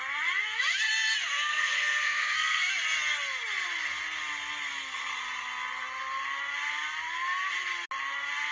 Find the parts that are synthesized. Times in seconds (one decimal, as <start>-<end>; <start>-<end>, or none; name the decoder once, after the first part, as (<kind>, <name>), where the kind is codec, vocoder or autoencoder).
1.5-2.7 (codec, SNAC)